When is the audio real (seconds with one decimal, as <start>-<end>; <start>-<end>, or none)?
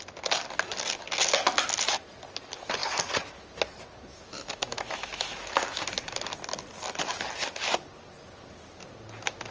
0.0-4.1; 5.8-9.5